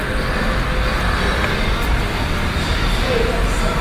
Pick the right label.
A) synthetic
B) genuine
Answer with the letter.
B